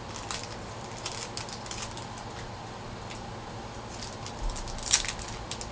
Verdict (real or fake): real